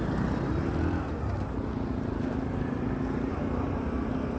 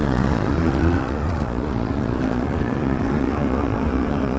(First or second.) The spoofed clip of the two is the second